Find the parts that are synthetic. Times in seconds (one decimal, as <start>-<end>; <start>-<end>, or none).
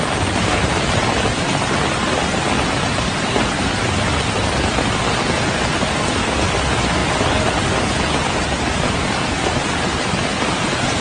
none